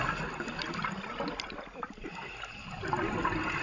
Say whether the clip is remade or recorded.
recorded